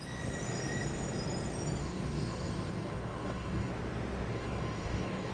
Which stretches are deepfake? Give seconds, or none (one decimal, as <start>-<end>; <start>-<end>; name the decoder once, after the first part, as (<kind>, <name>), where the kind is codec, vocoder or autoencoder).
1.8-3.7 (codec, DAC); 4.3-5.3